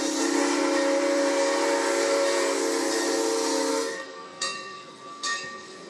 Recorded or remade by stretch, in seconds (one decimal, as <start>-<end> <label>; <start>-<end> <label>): 0.0-3.7 recorded; 3.7-5.9 remade